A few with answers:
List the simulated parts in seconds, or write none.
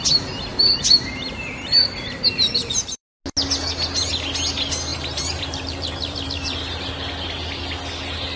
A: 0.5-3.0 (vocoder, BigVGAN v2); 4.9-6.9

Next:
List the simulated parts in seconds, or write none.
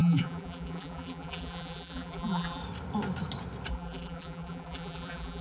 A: 0.0-2.6 (vocoder, BigVGAN v2); 3.7-5.4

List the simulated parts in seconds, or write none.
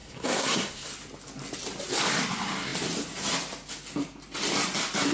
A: 0.0-0.9 (codec, SNAC)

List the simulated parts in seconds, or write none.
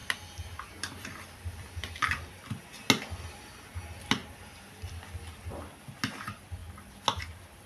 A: 0.0-2.5 (vocoder, BigVGAN v2); 4.2-5.0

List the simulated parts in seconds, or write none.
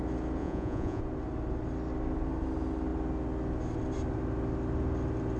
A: 0.4-1.0 (vocoder, Vocos)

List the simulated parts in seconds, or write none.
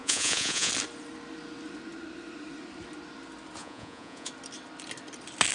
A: 0.0-0.7 (vocoder, Vocos); 3.6-4.3